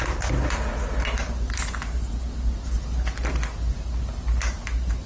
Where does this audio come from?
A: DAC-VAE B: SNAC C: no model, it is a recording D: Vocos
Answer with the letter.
C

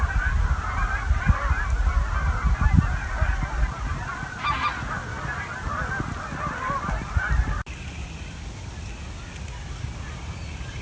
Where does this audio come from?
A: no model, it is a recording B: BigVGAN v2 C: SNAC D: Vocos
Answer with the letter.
A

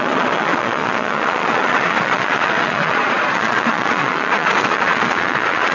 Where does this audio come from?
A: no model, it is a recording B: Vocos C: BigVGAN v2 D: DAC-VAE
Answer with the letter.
B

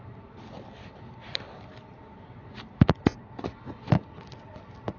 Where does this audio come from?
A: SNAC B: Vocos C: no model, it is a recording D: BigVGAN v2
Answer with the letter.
C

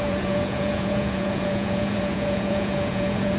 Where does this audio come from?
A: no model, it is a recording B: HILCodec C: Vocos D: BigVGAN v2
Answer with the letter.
C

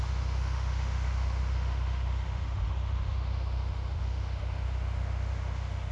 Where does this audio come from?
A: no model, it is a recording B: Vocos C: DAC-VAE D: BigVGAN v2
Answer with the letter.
C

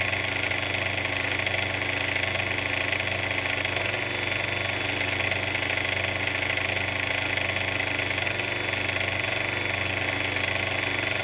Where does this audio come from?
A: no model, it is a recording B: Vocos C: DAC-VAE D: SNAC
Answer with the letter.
A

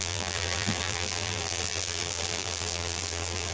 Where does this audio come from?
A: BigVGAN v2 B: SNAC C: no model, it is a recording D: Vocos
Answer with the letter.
A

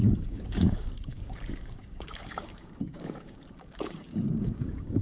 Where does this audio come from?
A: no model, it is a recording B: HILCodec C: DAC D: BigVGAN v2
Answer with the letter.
C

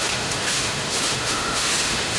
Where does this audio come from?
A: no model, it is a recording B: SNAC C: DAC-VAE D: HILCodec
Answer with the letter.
C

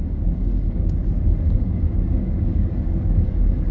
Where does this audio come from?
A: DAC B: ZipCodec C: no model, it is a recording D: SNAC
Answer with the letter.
A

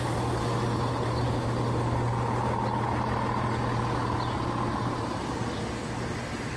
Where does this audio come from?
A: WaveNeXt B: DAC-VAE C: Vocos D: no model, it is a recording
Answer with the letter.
D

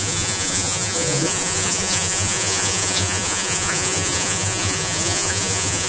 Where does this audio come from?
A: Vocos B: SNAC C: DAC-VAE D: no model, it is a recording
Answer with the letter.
A